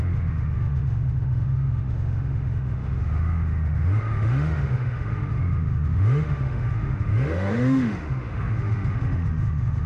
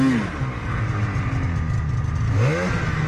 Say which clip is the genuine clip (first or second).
second